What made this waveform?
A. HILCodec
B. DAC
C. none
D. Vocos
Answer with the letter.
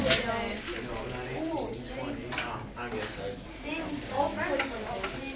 C